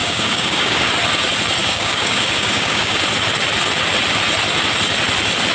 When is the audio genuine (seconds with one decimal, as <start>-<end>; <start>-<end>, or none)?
0.9-1.6; 3.0-5.5